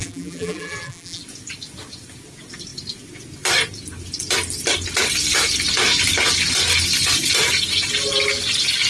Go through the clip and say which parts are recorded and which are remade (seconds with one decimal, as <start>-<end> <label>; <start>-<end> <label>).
0.0-1.2 remade; 1.2-8.9 recorded